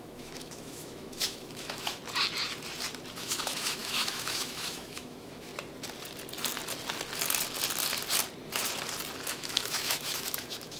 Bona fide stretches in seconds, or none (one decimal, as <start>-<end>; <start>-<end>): 2.0-3.2; 5.5-9.3